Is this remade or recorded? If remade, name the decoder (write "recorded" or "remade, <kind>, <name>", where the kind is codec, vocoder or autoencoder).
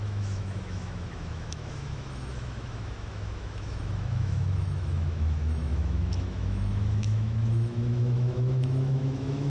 remade, autoencoder, DAC-VAE